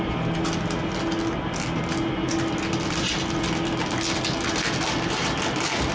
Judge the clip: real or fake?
real